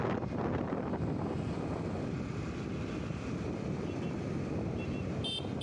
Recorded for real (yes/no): yes